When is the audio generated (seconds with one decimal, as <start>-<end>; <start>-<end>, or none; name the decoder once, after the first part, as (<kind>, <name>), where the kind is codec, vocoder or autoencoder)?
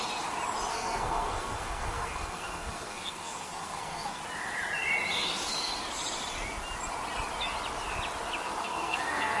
0.7-4.2 (codec, SNAC); 8.6-9.4